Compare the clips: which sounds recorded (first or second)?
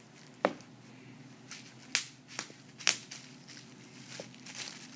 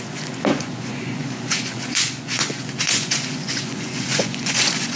first